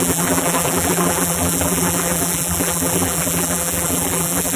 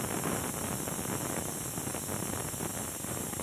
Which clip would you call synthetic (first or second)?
first